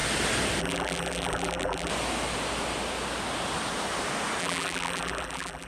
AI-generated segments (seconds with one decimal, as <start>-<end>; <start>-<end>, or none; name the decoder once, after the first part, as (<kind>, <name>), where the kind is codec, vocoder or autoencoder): 0.6-1.9 (vocoder, BigVGAN v2); 4.4-5.7